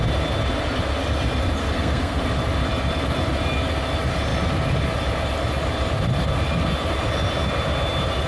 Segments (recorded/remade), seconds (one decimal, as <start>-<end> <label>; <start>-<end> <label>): 0.0-1.6 recorded; 1.6-2.2 remade; 2.2-8.3 recorded